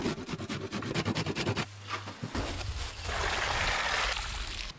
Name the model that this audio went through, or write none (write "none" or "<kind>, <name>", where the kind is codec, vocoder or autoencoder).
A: none